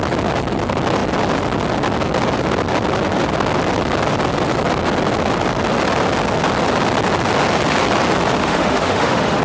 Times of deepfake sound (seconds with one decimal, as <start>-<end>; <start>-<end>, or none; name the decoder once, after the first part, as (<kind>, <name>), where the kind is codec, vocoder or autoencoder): 8.4-9.4 (autoencoder, DAC-VAE)